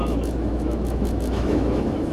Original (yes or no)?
no